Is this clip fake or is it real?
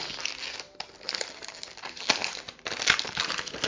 real